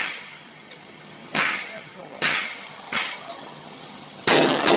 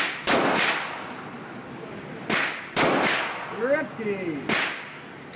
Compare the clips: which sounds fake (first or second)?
first